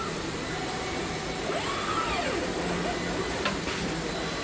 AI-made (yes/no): no